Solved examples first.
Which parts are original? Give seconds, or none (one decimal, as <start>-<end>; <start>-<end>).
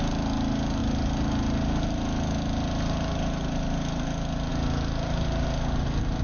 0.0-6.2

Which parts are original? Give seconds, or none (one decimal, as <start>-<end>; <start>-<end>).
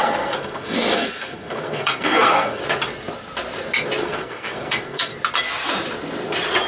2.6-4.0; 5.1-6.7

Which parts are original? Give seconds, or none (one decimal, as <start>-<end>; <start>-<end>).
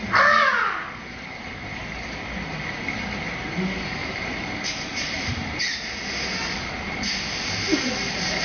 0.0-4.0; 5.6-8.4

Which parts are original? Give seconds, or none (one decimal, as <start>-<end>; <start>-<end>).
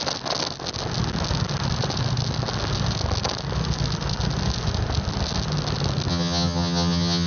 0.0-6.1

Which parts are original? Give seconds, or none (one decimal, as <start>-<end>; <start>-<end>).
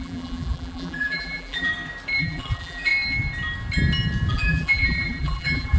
1.7-2.2; 2.9-4.3